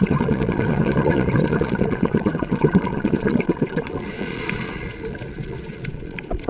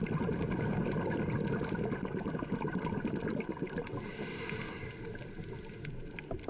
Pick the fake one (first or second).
first